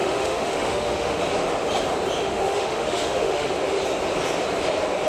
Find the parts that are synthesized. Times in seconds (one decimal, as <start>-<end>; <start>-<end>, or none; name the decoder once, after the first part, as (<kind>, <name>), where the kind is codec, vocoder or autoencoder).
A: 0.0-1.2 (autoencoder, DAC-VAE); 2.2-3.5